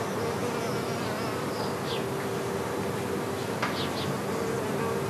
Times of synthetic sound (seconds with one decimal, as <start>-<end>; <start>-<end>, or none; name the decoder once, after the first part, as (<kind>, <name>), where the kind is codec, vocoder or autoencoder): none